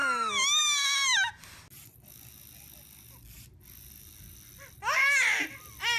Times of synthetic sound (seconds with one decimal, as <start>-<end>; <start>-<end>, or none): 0.0-1.3